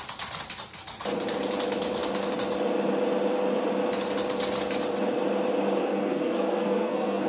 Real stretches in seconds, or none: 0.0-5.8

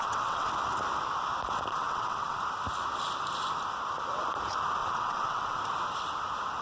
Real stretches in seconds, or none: 0.5-1.7; 2.4-4.8; 5.6-6.6